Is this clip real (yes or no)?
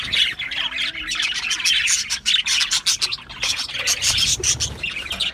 yes